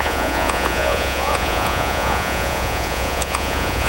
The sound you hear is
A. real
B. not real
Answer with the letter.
B